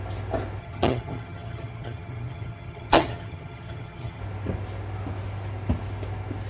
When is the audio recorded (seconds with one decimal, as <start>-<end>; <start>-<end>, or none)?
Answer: 0.0-0.6; 4.2-6.5